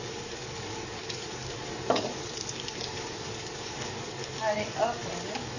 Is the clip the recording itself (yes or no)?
no